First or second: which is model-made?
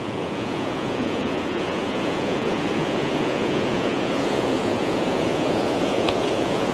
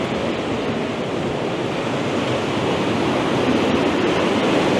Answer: first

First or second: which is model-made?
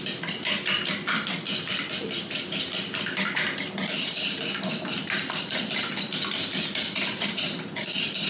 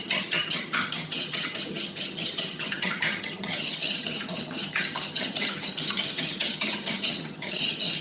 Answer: second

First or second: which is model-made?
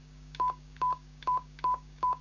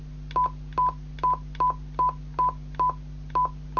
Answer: first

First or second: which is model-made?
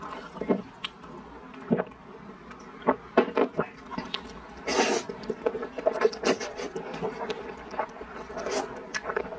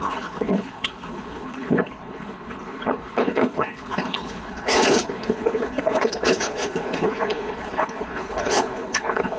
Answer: second